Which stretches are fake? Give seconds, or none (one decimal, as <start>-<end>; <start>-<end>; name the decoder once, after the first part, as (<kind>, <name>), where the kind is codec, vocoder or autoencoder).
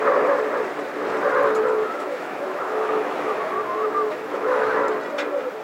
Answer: 1.8-4.7 (autoencoder, DAC-VAE)